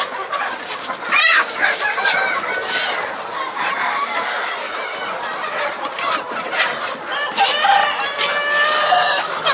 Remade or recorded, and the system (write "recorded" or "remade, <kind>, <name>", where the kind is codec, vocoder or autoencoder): recorded